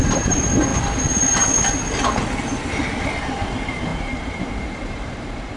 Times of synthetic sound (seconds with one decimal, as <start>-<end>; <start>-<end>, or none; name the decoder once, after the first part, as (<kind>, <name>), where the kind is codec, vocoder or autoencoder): 0.0-0.7 (vocoder, BigVGAN v2); 3.2-5.6